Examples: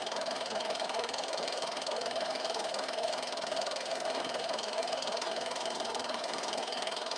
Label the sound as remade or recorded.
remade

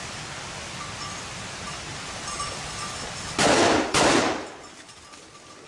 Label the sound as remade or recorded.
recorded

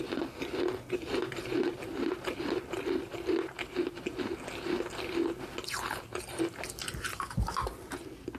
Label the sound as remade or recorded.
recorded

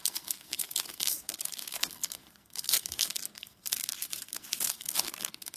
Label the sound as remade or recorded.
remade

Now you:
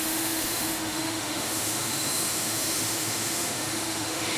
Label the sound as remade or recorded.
remade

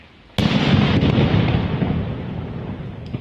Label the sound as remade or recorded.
recorded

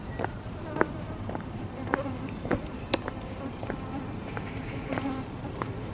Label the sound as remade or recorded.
remade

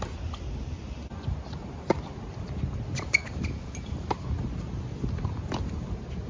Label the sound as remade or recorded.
recorded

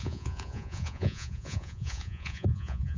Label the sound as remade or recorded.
remade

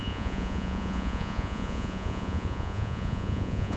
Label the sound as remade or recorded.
remade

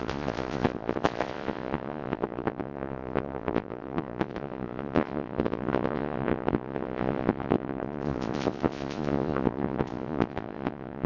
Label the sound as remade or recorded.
remade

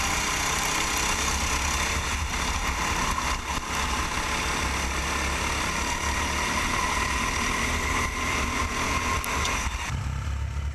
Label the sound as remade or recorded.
recorded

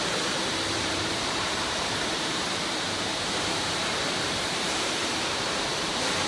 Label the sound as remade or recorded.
remade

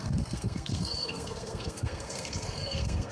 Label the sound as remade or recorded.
remade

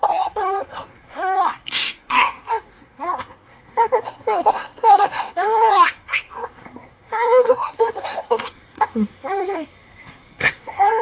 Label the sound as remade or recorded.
remade